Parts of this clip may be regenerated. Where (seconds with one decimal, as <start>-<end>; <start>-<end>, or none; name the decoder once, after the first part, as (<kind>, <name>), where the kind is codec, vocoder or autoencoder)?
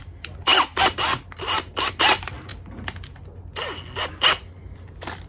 none